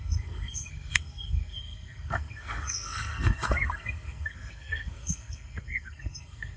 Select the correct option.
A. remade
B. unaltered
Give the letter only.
A